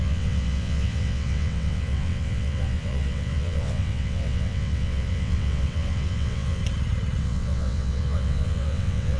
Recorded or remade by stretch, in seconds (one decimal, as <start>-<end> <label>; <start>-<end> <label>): 0.0-6.6 remade; 6.6-7.2 recorded; 7.2-9.2 remade